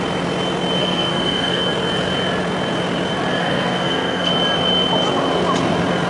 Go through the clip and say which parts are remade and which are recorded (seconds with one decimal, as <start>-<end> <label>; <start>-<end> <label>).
0.0-0.8 recorded; 0.8-1.6 remade; 1.6-3.4 recorded; 3.4-4.3 remade; 4.3-6.1 recorded